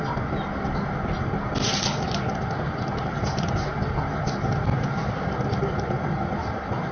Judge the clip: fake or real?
real